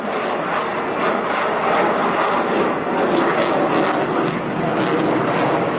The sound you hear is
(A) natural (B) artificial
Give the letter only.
A